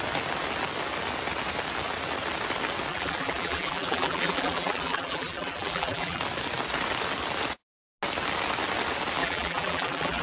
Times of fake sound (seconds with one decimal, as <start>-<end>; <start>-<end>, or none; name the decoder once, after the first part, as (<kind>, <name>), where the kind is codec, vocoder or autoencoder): 2.9-6.2 (vocoder, BigVGAN v2); 9.2-10.2